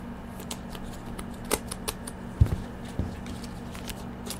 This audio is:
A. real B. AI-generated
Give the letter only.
A